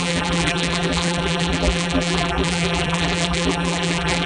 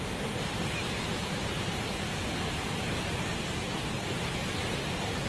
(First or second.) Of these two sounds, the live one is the second